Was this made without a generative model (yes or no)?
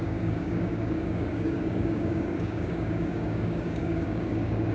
no